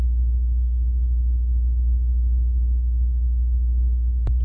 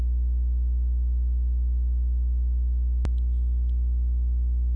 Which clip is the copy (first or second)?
first